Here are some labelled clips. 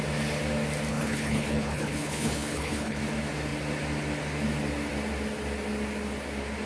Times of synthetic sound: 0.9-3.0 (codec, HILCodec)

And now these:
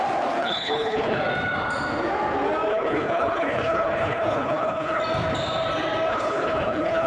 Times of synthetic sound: 0.4-1.2 (codec, HILCodec); 2.7-5.0; 6.1-7.1

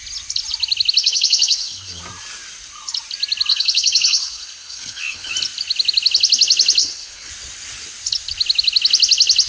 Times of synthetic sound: 1.0-2.0 (codec, HILCodec); 3.5-5.3; 6.8-7.3

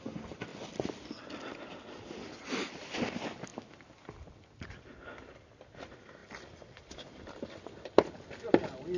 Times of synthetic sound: none